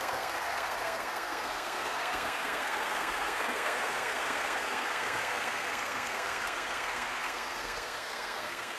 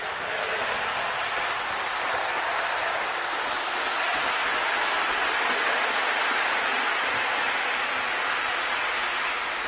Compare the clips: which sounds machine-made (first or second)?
first